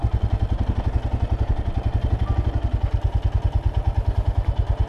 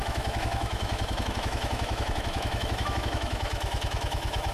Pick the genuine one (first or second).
first